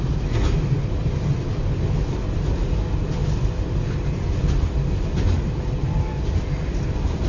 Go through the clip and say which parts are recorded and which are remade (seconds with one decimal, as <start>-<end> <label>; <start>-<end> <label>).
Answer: 0.0-7.3 recorded